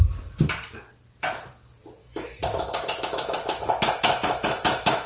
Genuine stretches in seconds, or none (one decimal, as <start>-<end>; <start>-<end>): 0.0-2.0